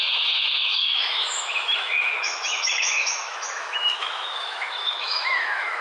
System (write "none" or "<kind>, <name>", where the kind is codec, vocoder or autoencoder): autoencoder, DAC-VAE